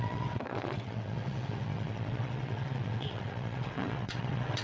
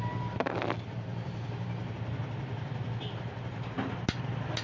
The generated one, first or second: first